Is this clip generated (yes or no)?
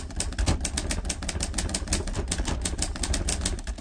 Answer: no